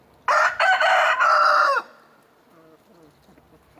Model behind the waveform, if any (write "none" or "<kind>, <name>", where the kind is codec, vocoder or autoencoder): none